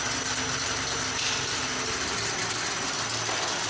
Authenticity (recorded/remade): recorded